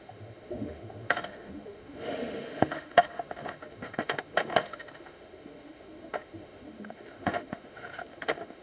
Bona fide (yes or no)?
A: no